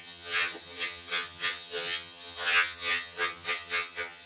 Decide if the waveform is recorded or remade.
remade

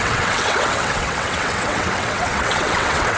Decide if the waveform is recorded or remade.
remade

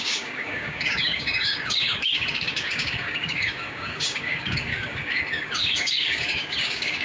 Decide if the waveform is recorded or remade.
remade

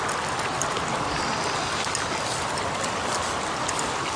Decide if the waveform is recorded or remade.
recorded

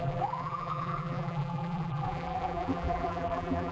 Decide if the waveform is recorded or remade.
remade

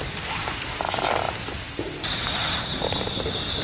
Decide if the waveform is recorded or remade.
recorded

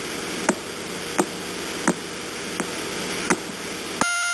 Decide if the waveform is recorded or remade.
recorded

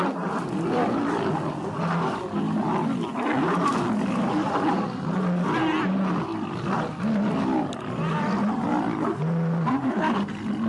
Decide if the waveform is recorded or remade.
recorded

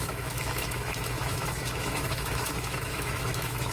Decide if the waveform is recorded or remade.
remade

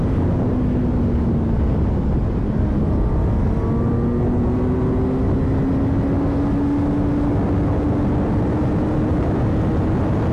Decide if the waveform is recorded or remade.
recorded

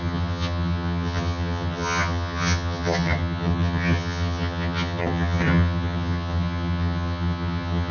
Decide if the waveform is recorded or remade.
remade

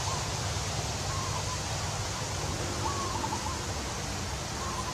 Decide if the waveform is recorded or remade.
recorded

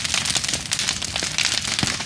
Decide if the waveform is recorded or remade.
recorded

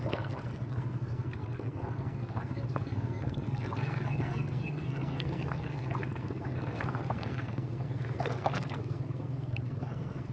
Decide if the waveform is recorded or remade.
remade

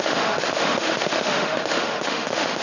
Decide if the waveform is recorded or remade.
remade